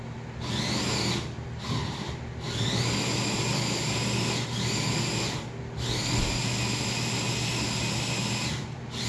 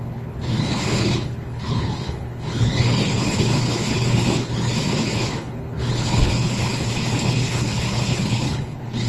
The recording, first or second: first